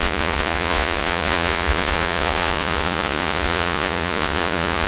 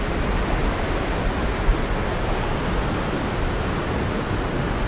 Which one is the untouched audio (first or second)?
second